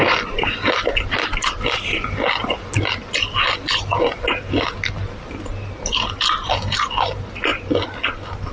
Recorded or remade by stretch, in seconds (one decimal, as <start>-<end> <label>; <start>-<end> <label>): 0.0-8.5 recorded